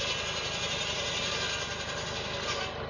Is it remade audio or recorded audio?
recorded